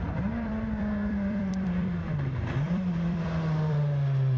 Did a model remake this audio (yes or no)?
yes